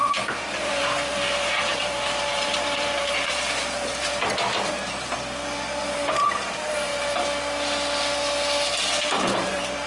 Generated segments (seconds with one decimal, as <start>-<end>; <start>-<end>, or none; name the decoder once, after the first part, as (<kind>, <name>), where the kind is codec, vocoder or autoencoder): 0.0-4.1 (vocoder, BigVGAN v2); 5.8-6.9; 8.9-9.9